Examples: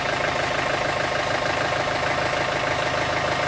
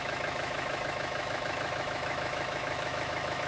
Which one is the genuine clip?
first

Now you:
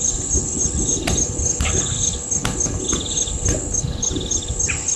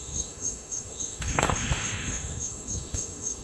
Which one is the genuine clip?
first